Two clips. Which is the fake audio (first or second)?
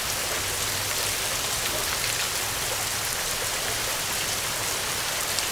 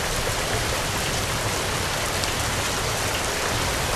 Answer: second